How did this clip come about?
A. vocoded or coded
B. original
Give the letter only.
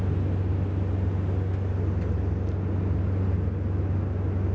B